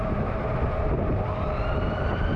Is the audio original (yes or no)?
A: no